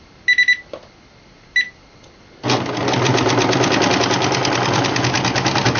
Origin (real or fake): real